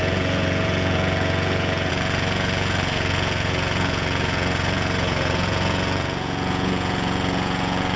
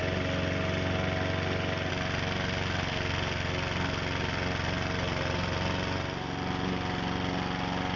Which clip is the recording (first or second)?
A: second